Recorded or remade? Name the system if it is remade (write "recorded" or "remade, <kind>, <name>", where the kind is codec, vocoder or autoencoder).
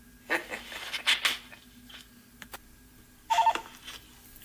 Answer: recorded